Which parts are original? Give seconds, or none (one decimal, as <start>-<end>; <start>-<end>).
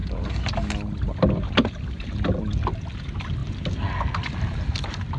0.0-5.2